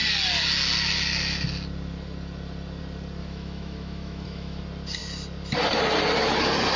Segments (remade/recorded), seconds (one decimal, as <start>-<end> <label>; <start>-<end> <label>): 0.0-3.2 recorded; 3.2-4.6 remade; 4.6-6.8 recorded

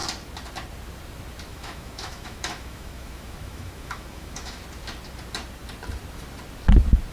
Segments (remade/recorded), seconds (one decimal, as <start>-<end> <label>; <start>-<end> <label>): 0.0-1.5 recorded; 1.5-4.6 remade; 4.6-7.1 recorded

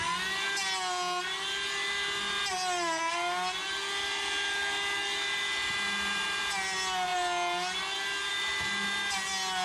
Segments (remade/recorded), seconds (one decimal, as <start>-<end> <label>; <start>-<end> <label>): 0.0-9.6 recorded

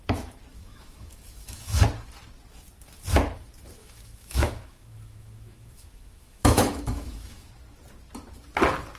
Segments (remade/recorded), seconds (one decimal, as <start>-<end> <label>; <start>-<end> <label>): 0.0-0.5 recorded; 0.5-1.8 remade; 1.8-3.8 recorded; 3.8-7.5 remade; 7.5-9.0 recorded